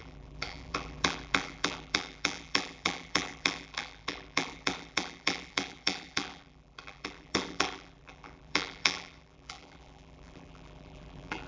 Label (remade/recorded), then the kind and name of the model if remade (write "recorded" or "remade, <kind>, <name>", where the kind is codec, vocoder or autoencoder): remade, vocoder, BigVGAN v2